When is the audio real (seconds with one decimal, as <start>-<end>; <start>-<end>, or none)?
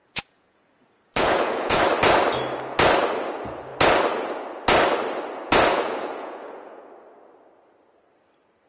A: 1.8-5.7; 6.8-8.7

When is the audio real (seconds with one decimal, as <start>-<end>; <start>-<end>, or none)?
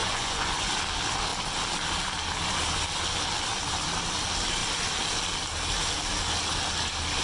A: 0.7-7.2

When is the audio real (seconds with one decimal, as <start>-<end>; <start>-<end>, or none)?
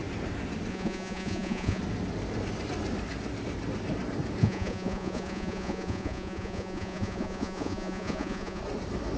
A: 0.0-0.7; 1.8-4.4; 8.6-9.2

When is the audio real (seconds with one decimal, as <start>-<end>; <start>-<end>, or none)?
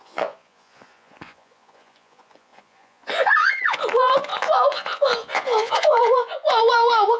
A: none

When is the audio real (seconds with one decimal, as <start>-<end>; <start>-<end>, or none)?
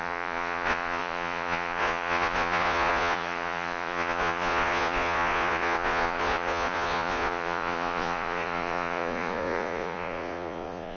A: none